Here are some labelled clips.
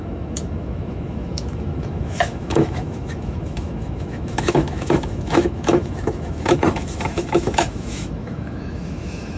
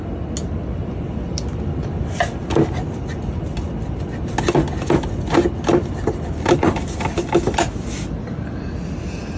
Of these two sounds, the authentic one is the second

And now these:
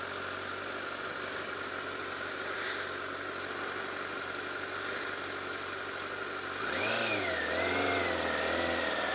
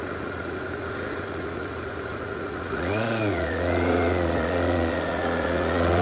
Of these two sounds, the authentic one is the first